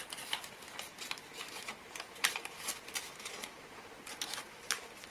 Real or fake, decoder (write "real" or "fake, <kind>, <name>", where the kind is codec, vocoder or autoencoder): real